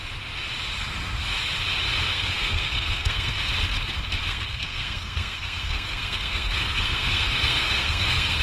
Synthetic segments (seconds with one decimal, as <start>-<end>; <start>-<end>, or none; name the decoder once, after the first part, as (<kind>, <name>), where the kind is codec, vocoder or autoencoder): 2.1-3.5 (codec, SNAC); 4.3-8.4